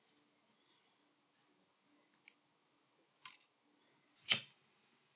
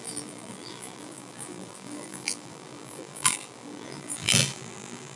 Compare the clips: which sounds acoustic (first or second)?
first